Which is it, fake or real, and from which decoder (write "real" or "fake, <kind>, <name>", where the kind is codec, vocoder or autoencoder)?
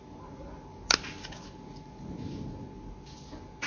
real